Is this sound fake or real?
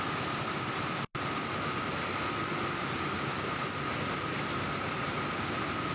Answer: real